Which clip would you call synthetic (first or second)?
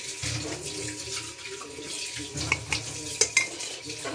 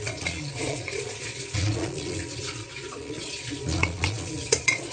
second